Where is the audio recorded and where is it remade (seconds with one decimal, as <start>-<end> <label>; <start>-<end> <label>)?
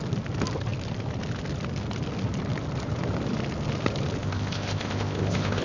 0.0-4.2 recorded; 4.2-5.6 remade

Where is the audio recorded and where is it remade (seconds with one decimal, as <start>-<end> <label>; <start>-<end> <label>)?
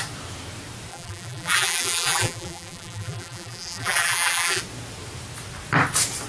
0.0-0.9 recorded; 0.9-4.6 remade; 4.6-6.3 recorded